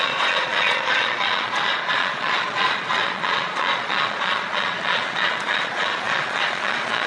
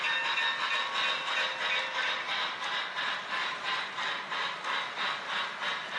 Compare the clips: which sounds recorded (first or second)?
second